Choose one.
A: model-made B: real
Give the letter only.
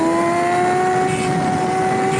B